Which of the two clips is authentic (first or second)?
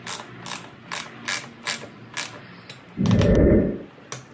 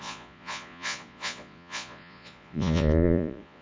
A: first